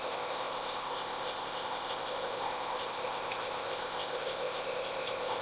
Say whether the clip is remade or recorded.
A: remade